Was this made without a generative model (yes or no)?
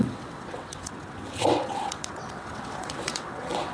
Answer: no